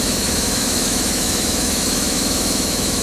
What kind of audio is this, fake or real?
fake